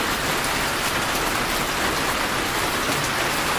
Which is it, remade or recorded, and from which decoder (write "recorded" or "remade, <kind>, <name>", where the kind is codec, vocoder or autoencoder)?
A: remade, vocoder, BigVGAN v2